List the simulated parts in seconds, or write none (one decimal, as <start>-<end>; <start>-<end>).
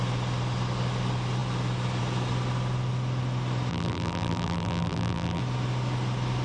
3.7-5.4